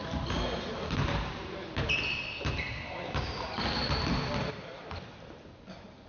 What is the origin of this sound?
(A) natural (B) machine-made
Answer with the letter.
A